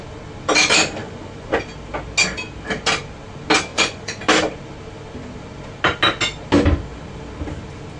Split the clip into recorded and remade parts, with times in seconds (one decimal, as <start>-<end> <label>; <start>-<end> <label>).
0.0-1.0 recorded; 1.0-1.6 remade; 1.6-3.7 recorded; 3.7-4.2 remade; 4.2-8.0 recorded